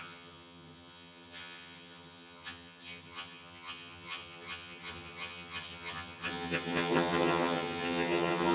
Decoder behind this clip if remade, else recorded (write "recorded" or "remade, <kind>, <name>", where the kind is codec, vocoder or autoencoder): remade, vocoder, HiFi-GAN